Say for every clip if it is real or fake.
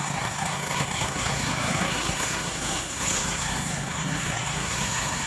fake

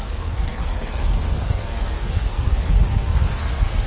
fake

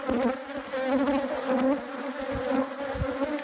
real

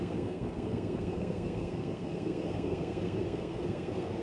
fake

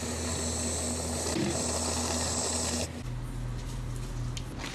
real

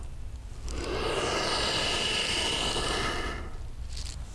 real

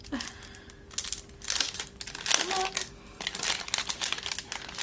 real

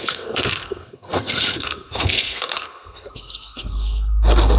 fake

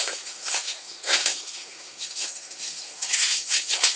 fake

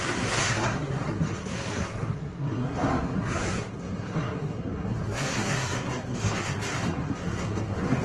fake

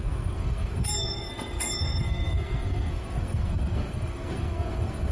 fake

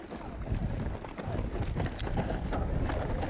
real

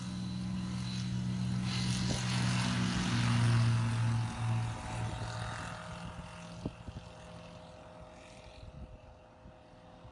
real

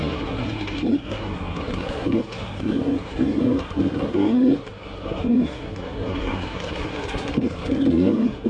fake